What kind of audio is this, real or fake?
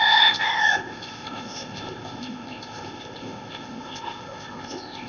fake